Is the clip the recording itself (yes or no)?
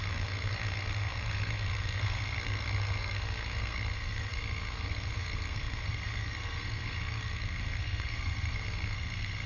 no